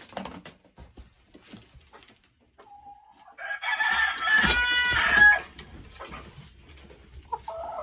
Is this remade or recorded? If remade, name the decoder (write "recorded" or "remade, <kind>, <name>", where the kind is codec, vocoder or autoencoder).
recorded